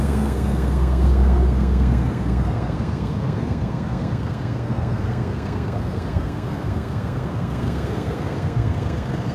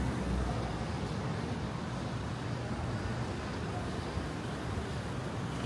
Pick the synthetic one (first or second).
first